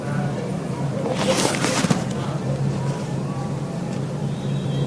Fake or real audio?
real